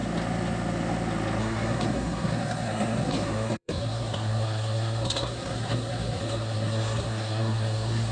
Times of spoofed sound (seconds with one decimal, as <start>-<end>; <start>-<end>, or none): 1.4-8.1